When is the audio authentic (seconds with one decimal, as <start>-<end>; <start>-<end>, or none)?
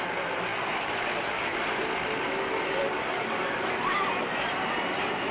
0.0-5.3